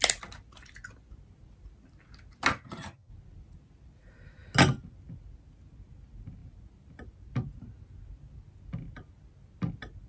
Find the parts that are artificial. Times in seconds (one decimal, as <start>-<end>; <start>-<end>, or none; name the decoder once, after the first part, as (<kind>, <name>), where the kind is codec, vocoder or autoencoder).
2.5-3.1 (vocoder, HiFi-GAN)